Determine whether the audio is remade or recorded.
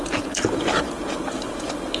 recorded